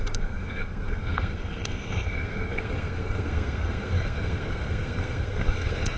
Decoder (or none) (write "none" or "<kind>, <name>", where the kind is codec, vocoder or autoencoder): codec, SNAC